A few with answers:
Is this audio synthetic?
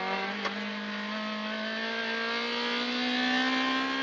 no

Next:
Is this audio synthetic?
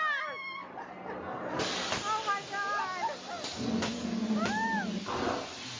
no